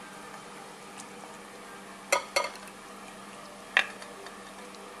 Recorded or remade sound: recorded